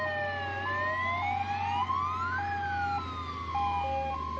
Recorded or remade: recorded